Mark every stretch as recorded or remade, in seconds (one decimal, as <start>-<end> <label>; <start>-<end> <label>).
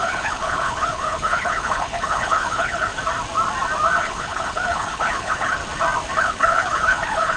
0.0-2.9 remade; 2.9-4.0 recorded; 4.0-5.6 remade; 5.6-6.2 recorded; 6.2-7.4 remade